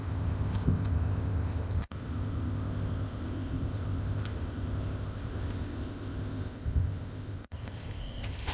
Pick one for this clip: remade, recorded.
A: remade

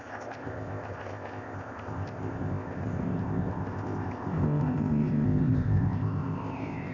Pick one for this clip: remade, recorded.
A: remade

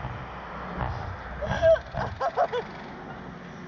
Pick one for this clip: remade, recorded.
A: recorded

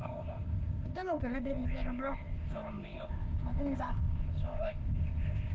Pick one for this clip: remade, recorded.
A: remade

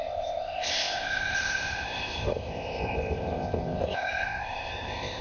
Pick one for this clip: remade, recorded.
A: remade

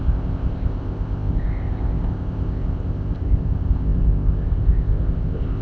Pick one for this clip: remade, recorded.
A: remade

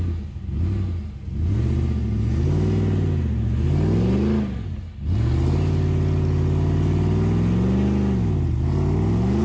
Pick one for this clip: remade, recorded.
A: recorded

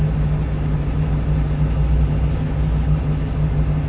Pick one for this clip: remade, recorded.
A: recorded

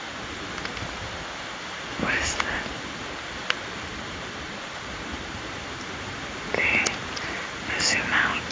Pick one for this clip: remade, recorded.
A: recorded